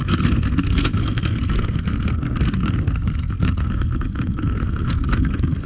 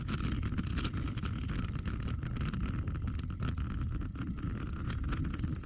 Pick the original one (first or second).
second